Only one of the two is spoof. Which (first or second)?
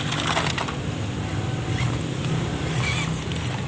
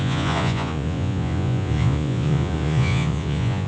second